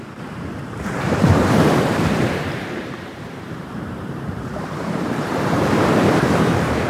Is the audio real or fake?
fake